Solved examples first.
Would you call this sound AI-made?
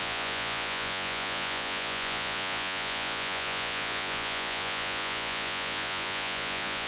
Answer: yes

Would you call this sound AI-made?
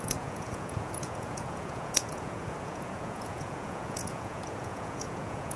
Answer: yes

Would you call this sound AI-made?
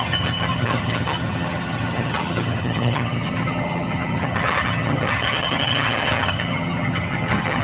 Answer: yes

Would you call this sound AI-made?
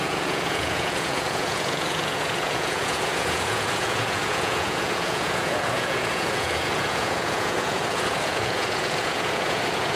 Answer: yes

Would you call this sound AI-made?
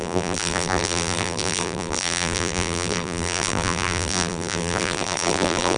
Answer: yes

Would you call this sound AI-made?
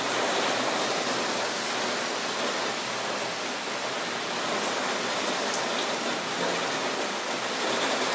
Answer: no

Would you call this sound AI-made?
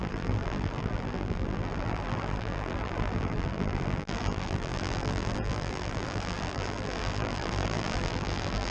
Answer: yes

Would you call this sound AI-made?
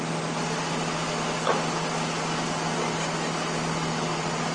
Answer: no